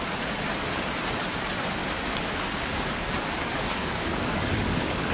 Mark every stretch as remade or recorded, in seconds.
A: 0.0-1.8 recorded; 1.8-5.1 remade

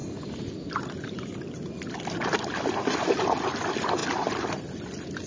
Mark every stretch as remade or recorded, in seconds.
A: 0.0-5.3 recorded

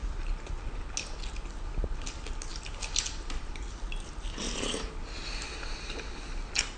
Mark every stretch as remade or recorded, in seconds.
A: 0.0-6.8 recorded

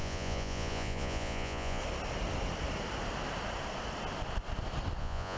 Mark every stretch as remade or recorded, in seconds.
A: 0.0-1.8 remade; 1.8-5.0 recorded; 5.0-5.4 remade

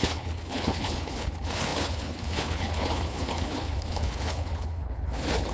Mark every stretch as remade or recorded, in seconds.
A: 0.0-5.5 remade

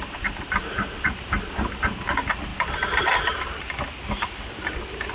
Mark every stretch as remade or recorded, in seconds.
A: 0.0-5.1 recorded

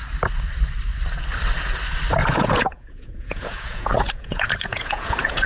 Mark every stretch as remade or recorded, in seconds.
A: 0.0-2.2 recorded; 2.2-5.5 remade